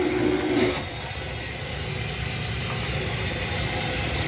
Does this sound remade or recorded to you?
recorded